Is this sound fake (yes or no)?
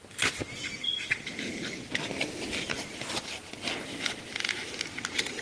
no